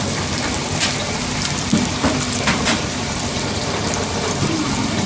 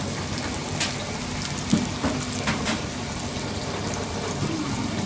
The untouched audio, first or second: second